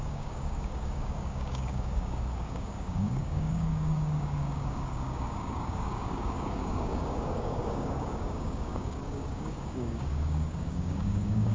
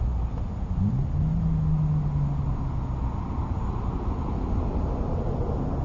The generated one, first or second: first